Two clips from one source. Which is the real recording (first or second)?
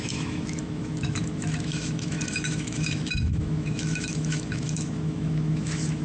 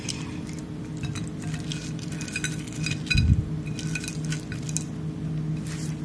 second